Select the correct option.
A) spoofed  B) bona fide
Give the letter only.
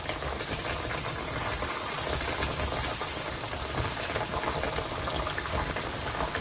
B